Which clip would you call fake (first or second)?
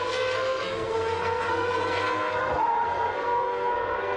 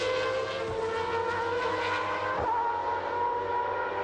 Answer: first